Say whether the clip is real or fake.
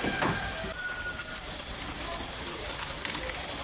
real